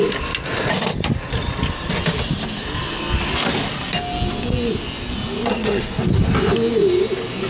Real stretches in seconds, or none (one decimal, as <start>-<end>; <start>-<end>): 0.0-5.5; 6.0-7.5